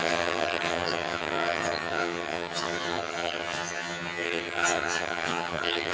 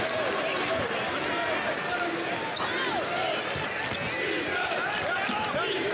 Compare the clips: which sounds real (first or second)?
second